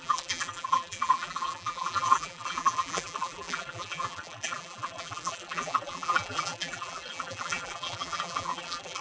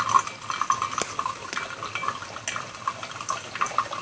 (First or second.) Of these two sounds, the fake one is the first